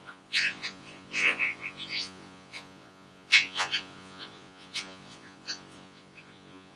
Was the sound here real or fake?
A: fake